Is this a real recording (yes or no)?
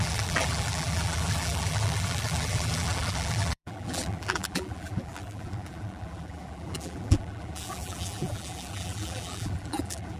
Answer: no